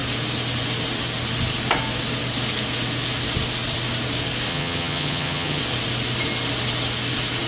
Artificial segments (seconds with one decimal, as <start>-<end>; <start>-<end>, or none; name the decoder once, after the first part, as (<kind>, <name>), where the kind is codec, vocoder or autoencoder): 4.5-5.6 (vocoder, HiFi-GAN)

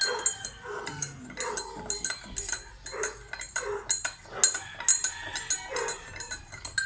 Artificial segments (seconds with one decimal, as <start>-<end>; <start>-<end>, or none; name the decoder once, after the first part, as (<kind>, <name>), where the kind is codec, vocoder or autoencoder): none

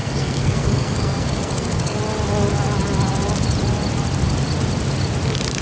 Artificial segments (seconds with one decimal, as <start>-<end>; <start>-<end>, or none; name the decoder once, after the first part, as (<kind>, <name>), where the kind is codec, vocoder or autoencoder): 0.0-2.0 (codec, SNAC)

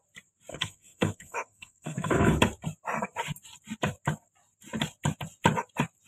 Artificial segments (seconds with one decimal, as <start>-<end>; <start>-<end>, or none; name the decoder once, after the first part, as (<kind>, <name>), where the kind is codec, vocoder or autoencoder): 0.5-2.4 (codec, SNAC)

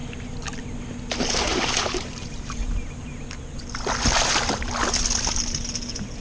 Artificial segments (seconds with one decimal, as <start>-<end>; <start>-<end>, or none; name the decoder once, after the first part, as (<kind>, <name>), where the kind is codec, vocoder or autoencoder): 1.5-3.6 (vocoder, BigVGAN v2)

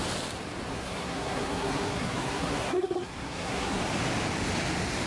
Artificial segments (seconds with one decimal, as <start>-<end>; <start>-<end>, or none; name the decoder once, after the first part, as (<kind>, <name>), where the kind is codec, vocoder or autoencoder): 0.7-3.8 (codec, SNAC)

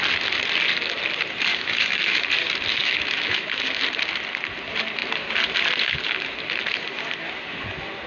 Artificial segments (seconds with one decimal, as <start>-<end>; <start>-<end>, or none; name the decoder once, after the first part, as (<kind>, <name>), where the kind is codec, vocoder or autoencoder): 1.5-2.2 (autoencoder, DAC-VAE); 2.8-3.8